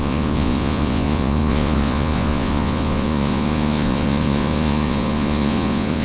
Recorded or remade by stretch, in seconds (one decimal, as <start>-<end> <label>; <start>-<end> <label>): 0.0-6.0 remade